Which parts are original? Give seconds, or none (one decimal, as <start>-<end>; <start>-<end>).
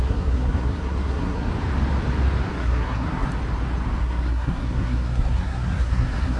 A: 1.5-2.5; 3.3-4.0